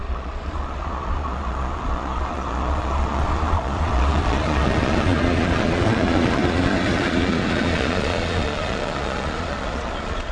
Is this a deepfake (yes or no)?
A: yes